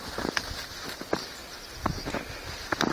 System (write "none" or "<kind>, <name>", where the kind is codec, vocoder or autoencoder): none